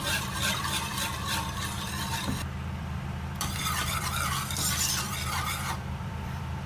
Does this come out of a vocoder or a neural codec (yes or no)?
yes